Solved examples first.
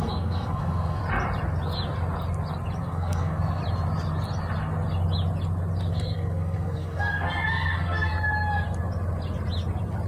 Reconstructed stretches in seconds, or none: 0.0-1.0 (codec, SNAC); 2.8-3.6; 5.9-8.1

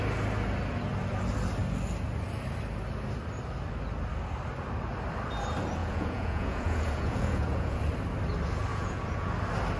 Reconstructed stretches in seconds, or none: 5.8-7.8 (vocoder, Vocos); 8.7-9.3

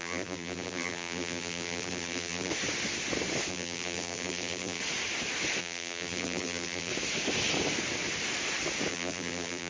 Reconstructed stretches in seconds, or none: 0.0-2.5 (vocoder, BigVGAN v2); 3.5-4.8; 5.6-6.9; 8.9-9.7